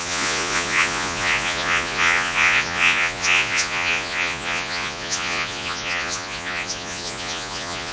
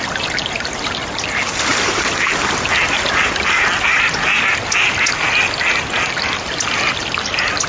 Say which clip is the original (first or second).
second